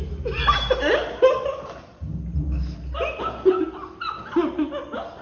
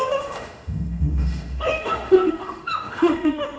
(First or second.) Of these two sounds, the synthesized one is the second